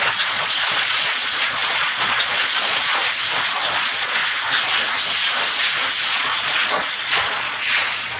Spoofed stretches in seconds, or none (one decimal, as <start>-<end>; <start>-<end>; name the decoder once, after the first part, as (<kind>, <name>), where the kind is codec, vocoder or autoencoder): 0.0-3.0 (vocoder, Vocos); 3.6-4.2; 6.1-8.2